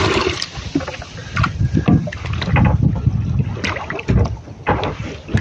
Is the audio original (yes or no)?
yes